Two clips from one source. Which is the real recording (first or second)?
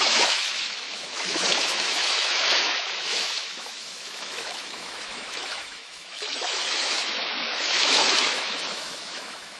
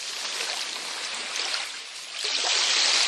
second